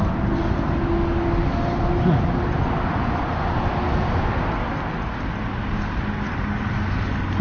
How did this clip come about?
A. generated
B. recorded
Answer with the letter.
B